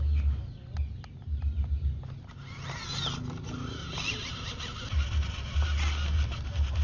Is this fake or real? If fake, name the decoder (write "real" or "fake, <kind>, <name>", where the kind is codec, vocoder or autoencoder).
real